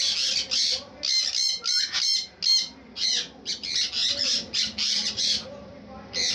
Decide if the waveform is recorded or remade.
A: recorded